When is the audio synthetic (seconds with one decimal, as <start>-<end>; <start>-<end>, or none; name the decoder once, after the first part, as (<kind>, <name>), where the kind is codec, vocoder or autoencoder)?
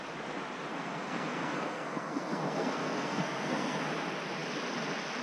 0.7-3.8 (codec, SNAC)